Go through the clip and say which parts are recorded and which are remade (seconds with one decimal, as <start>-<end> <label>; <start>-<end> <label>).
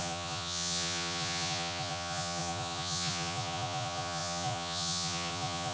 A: 0.0-5.7 remade